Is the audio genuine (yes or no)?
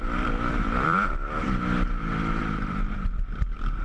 no